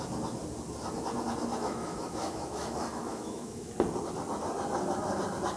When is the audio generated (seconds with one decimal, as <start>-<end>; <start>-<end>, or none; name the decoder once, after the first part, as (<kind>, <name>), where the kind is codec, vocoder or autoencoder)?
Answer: 1.5-3.7 (autoencoder, DAC-VAE)